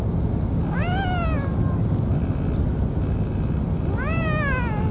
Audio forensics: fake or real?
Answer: real